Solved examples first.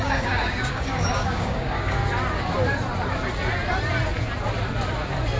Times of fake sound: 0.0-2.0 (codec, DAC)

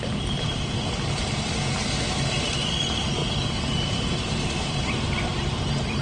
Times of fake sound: 0.0-1.7 (vocoder, BigVGAN v2); 2.6-3.2; 4.1-5.3

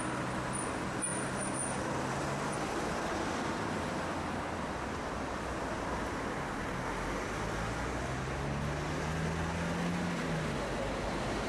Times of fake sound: none